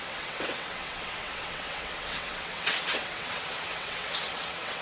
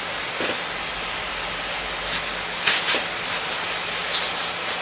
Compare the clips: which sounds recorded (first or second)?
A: second